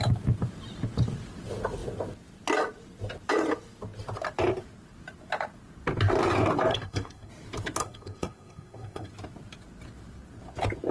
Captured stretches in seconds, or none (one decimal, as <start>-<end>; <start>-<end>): 0.0-6.7; 7.3-7.8; 9.1-10.9